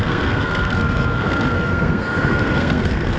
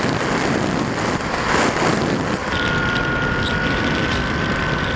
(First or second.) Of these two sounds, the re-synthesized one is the first